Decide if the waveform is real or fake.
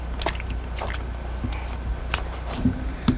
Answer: real